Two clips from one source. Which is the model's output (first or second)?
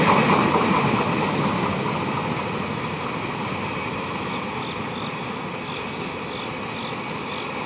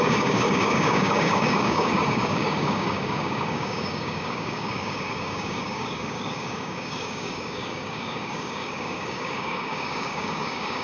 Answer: second